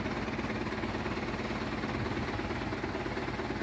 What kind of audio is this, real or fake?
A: real